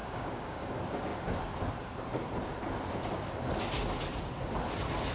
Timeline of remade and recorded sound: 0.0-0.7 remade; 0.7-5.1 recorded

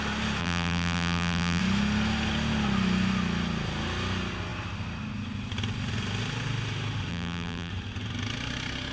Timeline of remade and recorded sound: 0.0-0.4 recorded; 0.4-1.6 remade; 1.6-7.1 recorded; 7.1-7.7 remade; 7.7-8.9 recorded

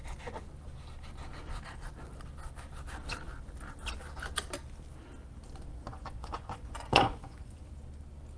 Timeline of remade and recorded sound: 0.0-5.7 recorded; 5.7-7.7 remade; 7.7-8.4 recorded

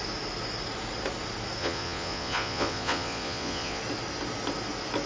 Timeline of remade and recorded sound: 0.0-1.6 recorded; 1.6-3.8 remade; 3.8-5.1 recorded

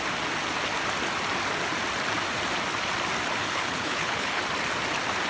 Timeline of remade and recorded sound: 0.0-3.4 recorded; 3.4-4.4 remade; 4.4-5.3 recorded

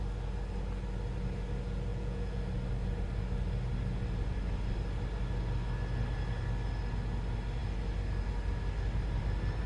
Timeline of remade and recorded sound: 0.0-1.9 recorded; 1.9-2.4 remade; 2.4-9.7 recorded